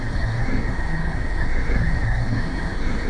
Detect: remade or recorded remade